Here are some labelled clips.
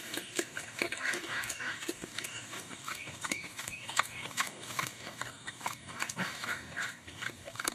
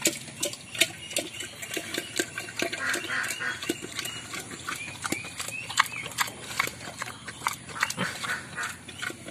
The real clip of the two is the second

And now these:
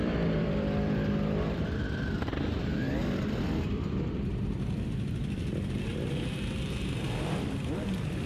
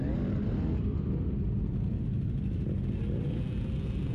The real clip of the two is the second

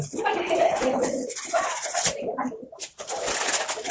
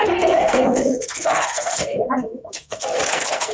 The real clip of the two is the first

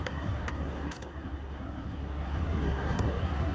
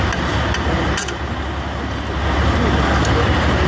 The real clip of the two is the second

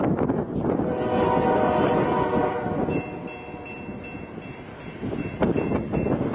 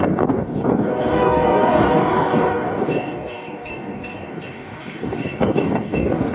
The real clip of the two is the first